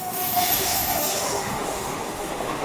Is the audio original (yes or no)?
no